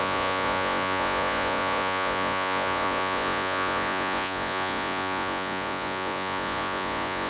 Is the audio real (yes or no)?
no